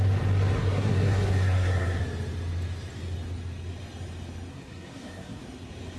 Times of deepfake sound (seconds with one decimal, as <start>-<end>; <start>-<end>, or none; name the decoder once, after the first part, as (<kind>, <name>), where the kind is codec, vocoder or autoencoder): 0.6-2.0 (codec, SNAC); 4.5-5.4

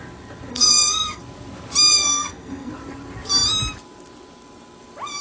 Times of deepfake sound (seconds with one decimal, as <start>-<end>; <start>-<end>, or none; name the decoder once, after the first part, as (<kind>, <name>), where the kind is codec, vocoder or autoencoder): 0.5-1.2 (codec, SNAC); 1.9-2.7